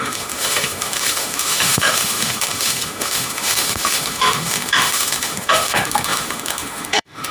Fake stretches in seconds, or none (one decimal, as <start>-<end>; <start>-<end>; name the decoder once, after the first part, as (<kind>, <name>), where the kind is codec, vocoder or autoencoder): 0.0-7.3 (autoencoder, DAC-VAE)